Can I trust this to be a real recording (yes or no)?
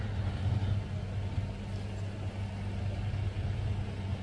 yes